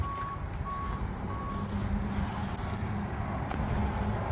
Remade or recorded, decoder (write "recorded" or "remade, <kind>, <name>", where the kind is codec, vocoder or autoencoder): recorded